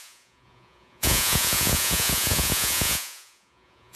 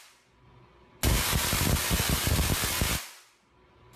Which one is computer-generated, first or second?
first